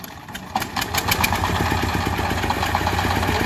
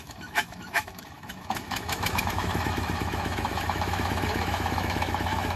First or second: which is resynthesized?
second